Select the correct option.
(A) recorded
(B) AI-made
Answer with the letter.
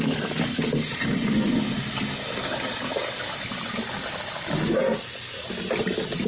A